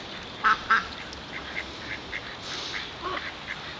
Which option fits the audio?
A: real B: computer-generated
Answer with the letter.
A